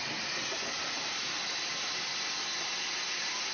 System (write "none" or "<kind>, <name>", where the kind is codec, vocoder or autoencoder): none